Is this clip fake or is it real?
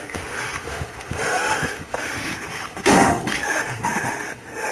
fake